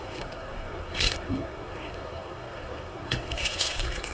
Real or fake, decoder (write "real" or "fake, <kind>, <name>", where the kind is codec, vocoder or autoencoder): fake, codec, SNAC